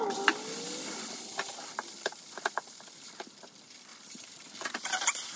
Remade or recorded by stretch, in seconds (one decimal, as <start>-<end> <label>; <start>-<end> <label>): 0.0-5.4 recorded